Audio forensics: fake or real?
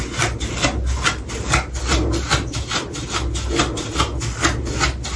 real